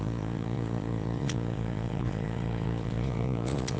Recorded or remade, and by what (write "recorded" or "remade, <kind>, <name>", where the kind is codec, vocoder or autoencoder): remade, vocoder, Vocos